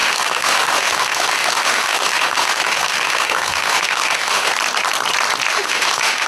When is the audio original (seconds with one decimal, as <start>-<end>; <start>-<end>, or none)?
4.5-5.5